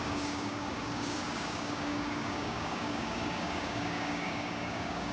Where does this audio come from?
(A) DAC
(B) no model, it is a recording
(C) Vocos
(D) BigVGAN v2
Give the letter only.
A